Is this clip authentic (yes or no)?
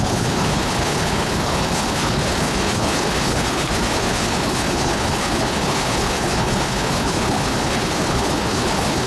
no